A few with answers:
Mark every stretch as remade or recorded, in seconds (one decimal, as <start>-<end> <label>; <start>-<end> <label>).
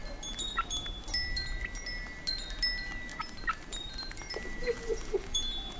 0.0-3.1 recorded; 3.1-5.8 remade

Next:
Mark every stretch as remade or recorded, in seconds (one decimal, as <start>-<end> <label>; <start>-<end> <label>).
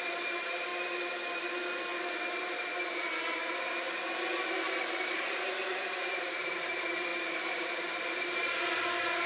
0.0-0.7 remade; 0.7-5.1 recorded; 5.1-7.1 remade; 7.1-7.6 recorded; 7.6-9.3 remade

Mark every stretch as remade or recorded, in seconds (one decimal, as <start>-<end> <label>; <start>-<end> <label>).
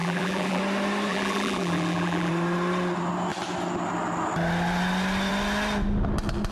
0.0-0.6 remade; 0.6-1.1 recorded; 1.1-2.3 remade; 2.3-6.5 recorded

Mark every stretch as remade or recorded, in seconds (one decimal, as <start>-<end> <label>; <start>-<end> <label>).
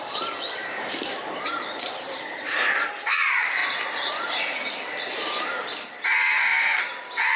0.0-0.6 recorded; 0.6-2.7 remade; 2.7-3.6 recorded; 3.6-4.3 remade; 4.3-6.5 recorded; 6.5-7.4 remade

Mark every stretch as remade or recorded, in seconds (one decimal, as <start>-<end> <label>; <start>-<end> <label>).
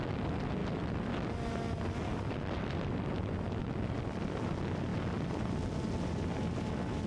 0.0-0.6 recorded; 0.6-1.1 remade; 1.1-2.1 recorded; 2.1-3.6 remade; 3.6-7.1 recorded